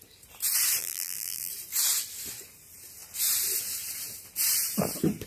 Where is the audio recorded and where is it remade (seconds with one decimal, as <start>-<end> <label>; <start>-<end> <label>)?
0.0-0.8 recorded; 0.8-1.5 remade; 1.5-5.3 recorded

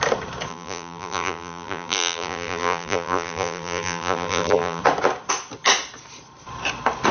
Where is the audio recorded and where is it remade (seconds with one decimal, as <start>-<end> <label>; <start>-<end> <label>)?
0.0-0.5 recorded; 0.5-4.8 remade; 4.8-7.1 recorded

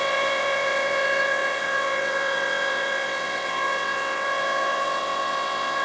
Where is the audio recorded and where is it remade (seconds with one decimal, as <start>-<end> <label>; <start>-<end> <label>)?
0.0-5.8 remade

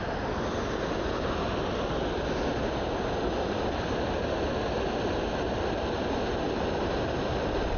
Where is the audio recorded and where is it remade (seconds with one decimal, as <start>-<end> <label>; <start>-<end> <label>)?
0.0-2.5 recorded; 2.5-3.1 remade; 3.1-7.8 recorded